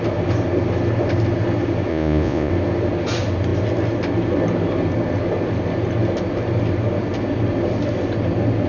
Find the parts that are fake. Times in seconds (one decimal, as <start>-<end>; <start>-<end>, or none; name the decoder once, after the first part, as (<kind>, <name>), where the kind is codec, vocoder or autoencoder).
1.9-2.5 (vocoder, Vocos)